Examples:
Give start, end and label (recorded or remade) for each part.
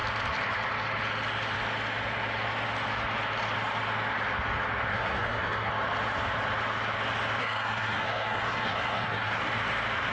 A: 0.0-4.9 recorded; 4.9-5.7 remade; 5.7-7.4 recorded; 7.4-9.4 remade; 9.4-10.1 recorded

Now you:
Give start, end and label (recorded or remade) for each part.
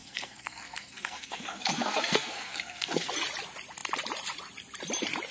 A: 0.0-3.1 remade; 3.1-5.3 recorded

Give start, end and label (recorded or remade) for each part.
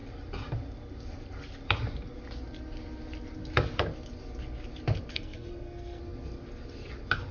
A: 0.0-5.1 recorded; 5.1-6.0 remade; 6.0-7.3 recorded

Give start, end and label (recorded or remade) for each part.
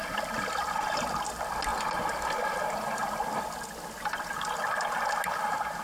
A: 0.0-5.8 recorded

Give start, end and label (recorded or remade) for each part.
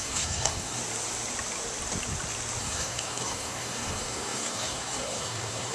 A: 0.0-0.8 remade; 0.8-2.6 recorded; 2.6-5.7 remade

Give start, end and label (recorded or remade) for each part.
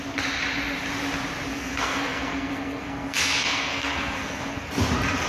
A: 0.0-1.5 recorded; 1.5-4.7 remade; 4.7-5.3 recorded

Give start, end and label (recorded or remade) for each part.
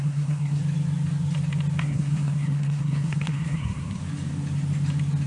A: 0.0-0.6 remade; 0.6-1.8 recorded; 1.8-4.0 remade; 4.0-5.3 recorded